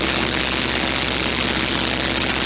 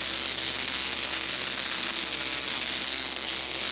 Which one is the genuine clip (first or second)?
first